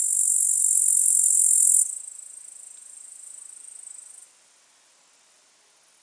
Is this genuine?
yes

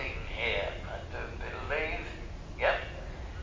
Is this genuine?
yes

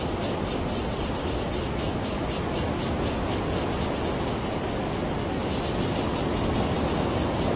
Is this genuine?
yes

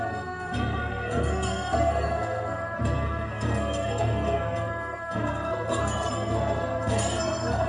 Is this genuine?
no